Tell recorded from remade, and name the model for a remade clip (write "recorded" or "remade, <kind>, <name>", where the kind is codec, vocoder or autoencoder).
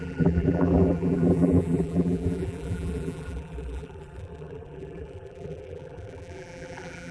remade, vocoder, BigVGAN v2